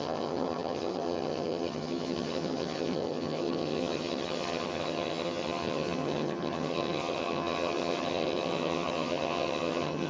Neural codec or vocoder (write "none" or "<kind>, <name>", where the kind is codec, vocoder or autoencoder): vocoder, HiFi-GAN